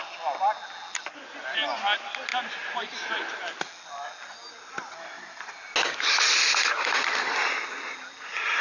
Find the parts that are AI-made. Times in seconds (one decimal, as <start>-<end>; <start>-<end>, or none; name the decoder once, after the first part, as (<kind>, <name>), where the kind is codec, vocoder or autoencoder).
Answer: none